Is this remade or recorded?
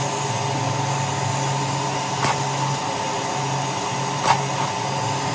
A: recorded